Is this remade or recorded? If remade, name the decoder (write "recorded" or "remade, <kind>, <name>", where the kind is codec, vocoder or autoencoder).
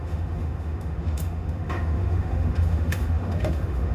remade, autoencoder, DAC-VAE